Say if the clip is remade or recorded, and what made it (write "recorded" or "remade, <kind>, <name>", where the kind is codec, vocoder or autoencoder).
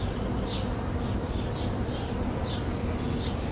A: recorded